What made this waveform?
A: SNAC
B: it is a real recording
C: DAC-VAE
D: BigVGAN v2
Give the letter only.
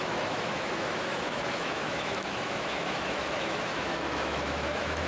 C